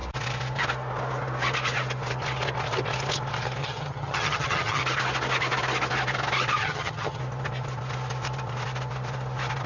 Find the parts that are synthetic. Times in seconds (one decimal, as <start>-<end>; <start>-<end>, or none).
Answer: 3.6-4.8; 6.6-7.2